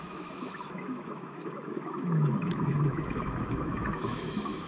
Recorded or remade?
remade